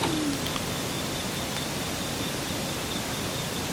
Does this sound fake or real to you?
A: real